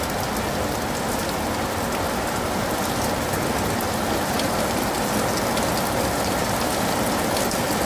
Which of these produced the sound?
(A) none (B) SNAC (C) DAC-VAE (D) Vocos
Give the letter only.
A